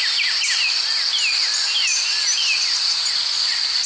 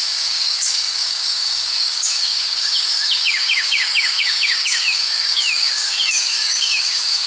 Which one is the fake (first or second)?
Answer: second